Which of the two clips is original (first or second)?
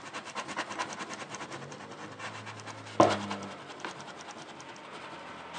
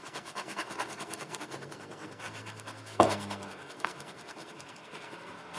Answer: first